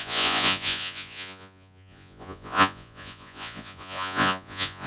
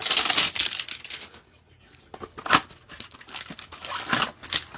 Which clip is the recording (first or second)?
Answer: second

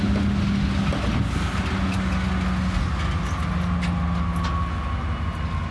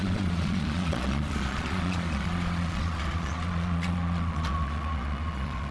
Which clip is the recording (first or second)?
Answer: first